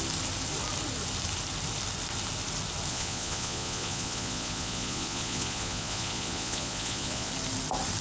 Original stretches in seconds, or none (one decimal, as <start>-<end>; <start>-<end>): 0.0-2.9; 7.3-8.0